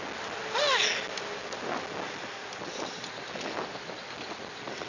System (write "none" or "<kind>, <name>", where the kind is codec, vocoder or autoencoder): none